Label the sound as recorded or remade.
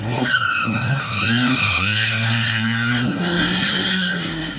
remade